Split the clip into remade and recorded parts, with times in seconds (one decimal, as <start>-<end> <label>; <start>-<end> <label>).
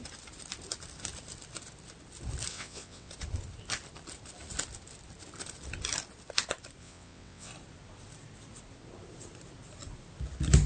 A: 0.0-2.5 recorded; 2.5-3.1 remade; 3.1-6.8 recorded; 6.8-7.5 remade; 7.5-10.7 recorded